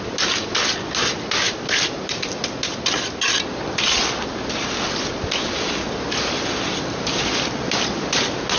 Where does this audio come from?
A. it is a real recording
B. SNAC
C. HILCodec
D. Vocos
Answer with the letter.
A